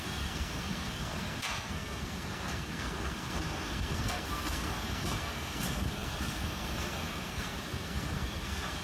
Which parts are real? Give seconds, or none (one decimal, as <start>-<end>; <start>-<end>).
none